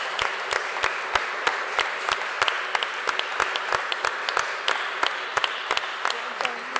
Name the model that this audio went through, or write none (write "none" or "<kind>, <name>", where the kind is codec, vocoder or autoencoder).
none